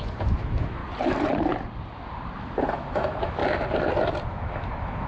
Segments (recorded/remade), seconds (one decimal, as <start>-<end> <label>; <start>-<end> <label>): 0.0-0.8 remade; 0.8-2.7 recorded; 2.7-3.4 remade; 3.4-4.2 recorded; 4.2-5.1 remade